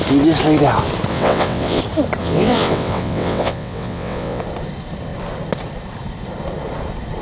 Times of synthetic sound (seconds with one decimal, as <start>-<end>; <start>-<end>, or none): 1.1-1.8; 2.2-4.4

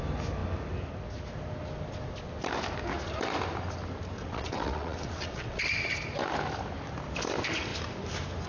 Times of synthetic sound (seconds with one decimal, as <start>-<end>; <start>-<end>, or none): 4.2-5.6

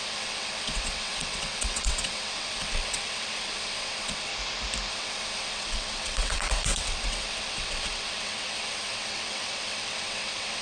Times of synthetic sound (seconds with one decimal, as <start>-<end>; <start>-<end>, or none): 0.0-4.3; 4.9-10.6

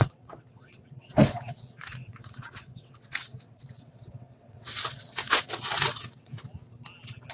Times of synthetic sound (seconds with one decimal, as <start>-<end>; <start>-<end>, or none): 0.0-6.3

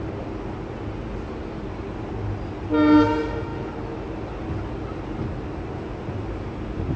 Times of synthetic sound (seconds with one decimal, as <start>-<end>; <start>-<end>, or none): none

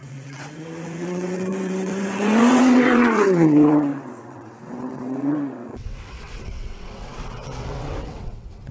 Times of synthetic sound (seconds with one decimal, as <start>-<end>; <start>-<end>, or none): 0.0-8.7

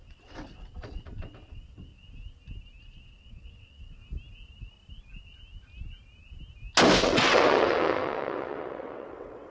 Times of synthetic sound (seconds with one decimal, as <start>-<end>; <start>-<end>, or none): 0.0-1.9; 3.2-4.0; 7.0-9.5